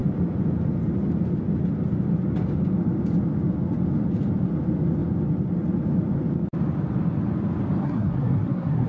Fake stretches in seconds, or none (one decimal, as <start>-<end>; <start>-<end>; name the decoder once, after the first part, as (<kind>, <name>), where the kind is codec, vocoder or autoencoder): 7.8-8.9 (codec, SNAC)